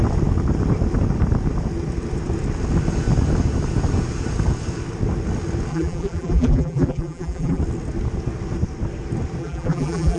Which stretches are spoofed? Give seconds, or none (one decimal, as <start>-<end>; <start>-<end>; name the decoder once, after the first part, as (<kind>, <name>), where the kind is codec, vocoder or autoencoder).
5.7-7.6 (vocoder, BigVGAN v2); 9.4-10.2